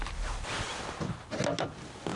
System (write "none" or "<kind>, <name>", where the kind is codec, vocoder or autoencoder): none